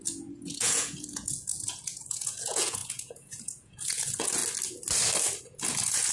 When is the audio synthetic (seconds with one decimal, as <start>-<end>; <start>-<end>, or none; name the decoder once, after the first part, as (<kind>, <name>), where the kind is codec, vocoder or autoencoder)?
0.0-4.4 (vocoder, Vocos); 5.4-6.1